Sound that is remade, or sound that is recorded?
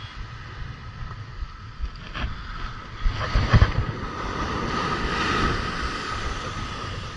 recorded